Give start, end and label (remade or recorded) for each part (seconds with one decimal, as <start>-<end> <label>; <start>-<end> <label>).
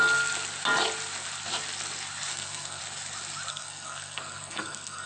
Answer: 0.0-2.3 recorded; 2.3-2.8 remade; 2.8-3.5 recorded; 3.5-5.1 remade